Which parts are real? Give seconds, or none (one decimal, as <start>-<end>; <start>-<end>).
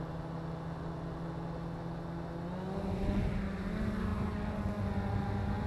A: 0.0-5.7